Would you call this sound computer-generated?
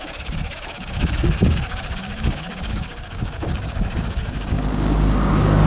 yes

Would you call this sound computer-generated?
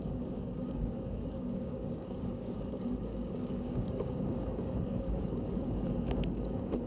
yes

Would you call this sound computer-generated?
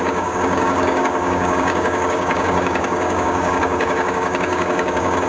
yes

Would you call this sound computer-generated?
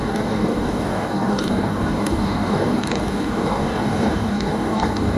yes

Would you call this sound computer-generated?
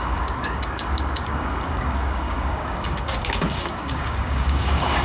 yes